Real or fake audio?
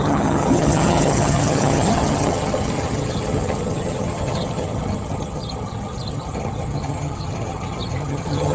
fake